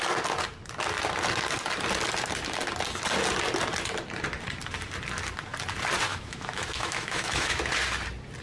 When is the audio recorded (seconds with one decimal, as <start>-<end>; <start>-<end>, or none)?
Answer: 0.0-6.1; 7.6-8.4